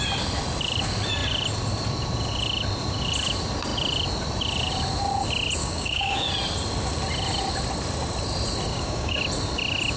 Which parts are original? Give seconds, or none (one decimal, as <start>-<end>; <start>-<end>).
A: 0.0-5.6; 6.3-8.7; 9.2-10.0